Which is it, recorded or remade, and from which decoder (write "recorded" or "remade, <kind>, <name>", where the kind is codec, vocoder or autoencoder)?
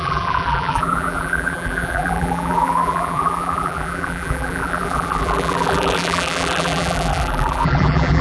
remade, vocoder, BigVGAN v2